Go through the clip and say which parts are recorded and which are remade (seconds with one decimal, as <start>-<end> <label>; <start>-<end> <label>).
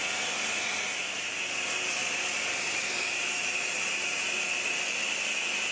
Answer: 0.0-2.0 recorded; 2.0-4.0 remade; 4.0-5.7 recorded